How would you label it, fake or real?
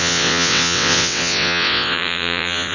fake